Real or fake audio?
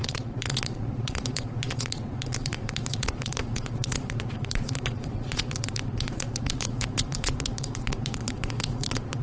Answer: fake